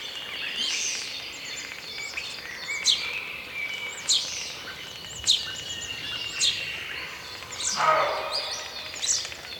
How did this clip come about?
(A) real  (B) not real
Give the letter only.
A